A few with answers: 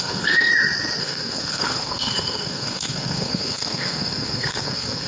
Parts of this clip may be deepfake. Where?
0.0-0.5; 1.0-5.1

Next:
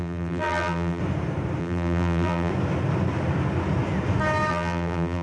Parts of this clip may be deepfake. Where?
0.0-1.0; 1.6-2.5; 4.5-5.2

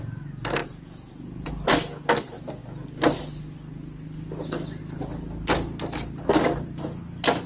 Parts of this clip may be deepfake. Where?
0.6-1.5

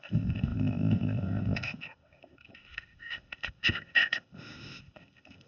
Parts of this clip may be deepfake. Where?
0.0-5.5